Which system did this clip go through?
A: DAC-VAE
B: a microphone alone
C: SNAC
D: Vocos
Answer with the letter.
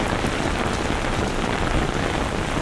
B